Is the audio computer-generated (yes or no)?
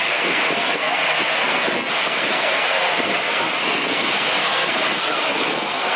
yes